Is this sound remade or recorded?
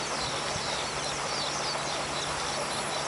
recorded